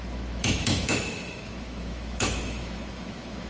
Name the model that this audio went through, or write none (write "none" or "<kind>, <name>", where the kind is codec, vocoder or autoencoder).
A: autoencoder, DAC-VAE